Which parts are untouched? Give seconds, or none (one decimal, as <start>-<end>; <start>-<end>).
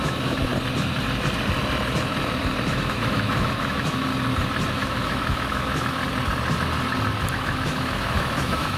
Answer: 0.5-2.7; 4.1-4.7; 6.0-7.3